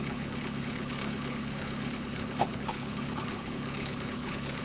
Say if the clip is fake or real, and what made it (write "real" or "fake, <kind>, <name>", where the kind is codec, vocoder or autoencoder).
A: fake, codec, HILCodec